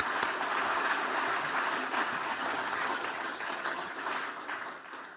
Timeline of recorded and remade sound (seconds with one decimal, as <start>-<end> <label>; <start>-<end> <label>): 0.0-2.3 recorded; 2.3-3.9 remade; 3.9-5.2 recorded